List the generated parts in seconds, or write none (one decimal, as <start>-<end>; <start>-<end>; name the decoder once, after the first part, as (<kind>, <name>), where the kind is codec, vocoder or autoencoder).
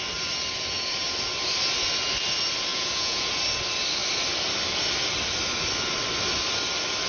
2.7-3.3 (vocoder, Vocos)